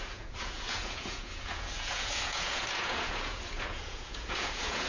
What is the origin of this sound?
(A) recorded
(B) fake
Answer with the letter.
B